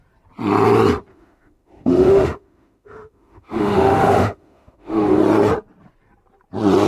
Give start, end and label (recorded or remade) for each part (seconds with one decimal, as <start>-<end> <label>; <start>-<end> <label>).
0.0-1.1 recorded; 1.1-5.2 remade; 5.2-6.9 recorded